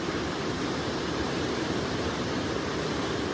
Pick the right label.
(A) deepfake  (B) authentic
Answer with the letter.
A